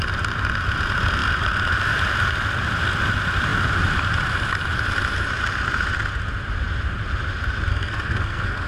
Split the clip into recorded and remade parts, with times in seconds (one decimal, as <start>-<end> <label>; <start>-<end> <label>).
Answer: 0.0-7.7 recorded; 7.7-8.7 remade